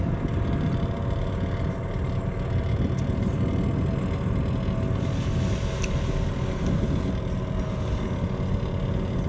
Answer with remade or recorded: recorded